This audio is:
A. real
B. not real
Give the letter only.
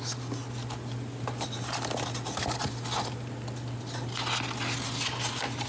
A